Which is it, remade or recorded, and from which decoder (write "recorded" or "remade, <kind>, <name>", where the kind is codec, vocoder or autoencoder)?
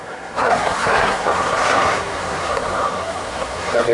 remade, codec, SNAC